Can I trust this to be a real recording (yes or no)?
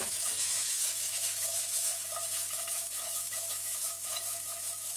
no